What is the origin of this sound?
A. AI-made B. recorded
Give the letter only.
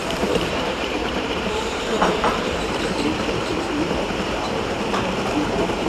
A